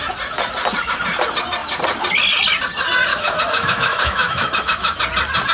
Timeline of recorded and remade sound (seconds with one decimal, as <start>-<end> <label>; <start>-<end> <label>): 0.0-3.1 recorded; 3.1-5.0 remade; 5.0-5.5 recorded